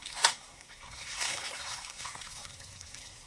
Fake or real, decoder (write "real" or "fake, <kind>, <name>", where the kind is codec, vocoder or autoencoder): fake, codec, SNAC